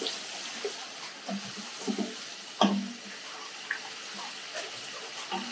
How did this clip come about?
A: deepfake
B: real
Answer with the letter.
B